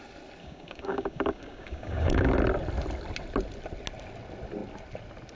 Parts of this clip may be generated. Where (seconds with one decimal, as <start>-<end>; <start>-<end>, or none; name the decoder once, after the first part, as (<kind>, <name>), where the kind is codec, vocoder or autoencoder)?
0.4-2.3 (codec, DAC)